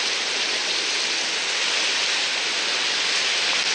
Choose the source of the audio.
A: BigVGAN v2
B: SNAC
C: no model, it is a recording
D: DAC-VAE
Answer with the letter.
C